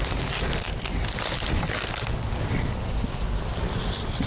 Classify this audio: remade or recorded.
recorded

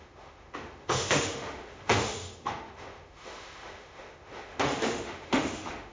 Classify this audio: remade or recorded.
remade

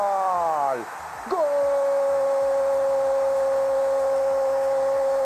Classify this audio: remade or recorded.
recorded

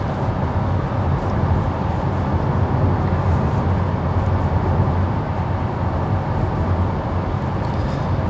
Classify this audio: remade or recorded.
recorded